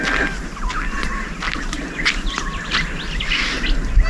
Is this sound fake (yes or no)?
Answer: no